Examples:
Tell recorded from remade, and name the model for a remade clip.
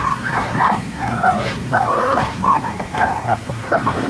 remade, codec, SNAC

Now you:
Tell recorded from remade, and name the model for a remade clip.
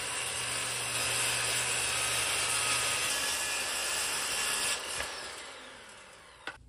recorded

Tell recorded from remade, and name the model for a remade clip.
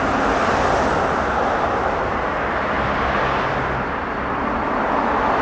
recorded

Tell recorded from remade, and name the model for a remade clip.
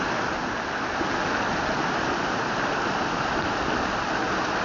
recorded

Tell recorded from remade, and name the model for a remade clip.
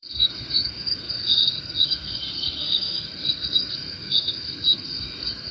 remade, codec, SNAC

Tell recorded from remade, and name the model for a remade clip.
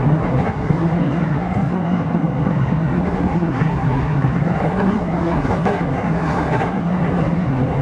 remade, codec, SNAC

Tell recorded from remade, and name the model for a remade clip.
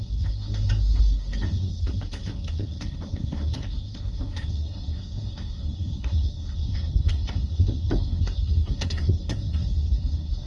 remade, codec, SNAC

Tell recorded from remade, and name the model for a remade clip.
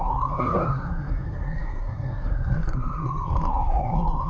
remade, codec, SNAC